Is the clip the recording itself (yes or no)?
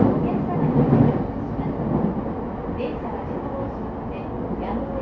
yes